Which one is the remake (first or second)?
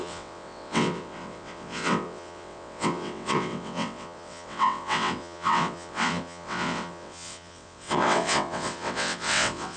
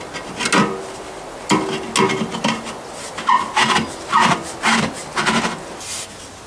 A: first